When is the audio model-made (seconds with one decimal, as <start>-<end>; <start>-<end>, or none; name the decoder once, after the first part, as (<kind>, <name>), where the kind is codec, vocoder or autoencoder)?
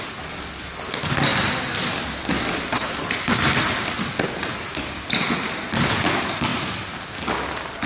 none